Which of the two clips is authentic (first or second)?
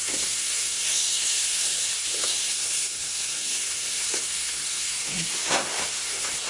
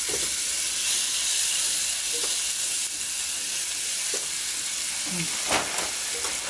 second